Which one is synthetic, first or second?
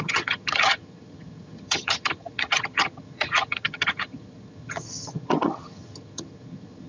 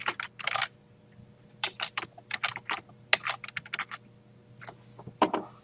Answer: first